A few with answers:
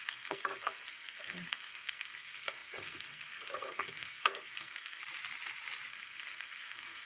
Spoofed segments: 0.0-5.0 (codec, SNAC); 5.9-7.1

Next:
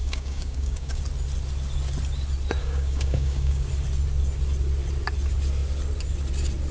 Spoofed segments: 0.0-1.0 (codec, DAC); 2.6-3.7

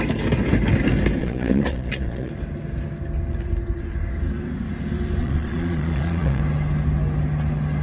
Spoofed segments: 1.2-2.3 (vocoder, Vocos); 5.2-6.4

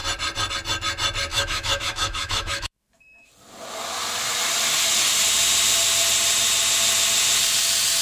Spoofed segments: 1.3-3.3 (autoencoder, DAC-VAE)

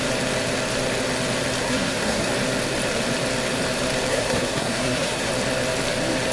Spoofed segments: 1.6-2.3 (codec, SNAC); 4.1-5.3

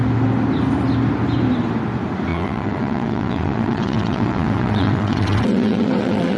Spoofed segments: 2.3-6.4 (vocoder, WaveNeXt)

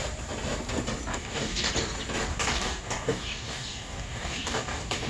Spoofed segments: 1.1-1.7 (codec, DAC); 2.3-5.1